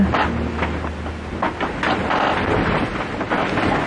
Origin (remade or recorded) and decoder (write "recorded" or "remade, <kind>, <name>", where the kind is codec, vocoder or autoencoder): recorded